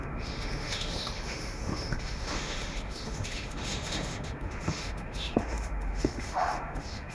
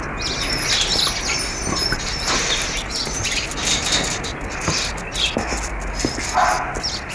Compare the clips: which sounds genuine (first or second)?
second